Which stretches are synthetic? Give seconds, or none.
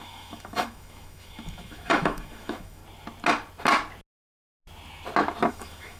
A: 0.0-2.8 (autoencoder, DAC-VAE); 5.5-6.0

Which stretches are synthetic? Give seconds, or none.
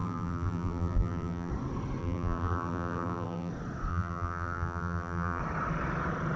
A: 0.0-1.5 (vocoder, BigVGAN v2); 2.0-3.5; 3.9-5.4